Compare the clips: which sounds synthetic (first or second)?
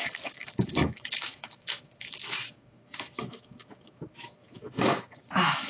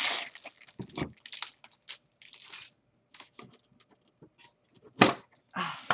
first